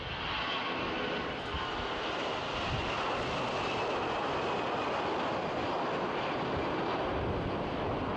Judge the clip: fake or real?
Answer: real